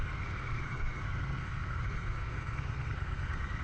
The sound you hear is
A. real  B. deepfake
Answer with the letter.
B